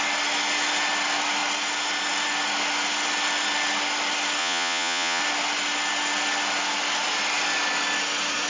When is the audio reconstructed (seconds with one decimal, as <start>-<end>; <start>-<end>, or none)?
4.4-5.2